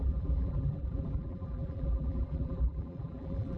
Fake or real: fake